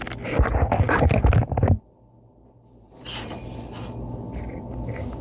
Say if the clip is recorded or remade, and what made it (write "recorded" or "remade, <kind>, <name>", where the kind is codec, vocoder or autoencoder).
recorded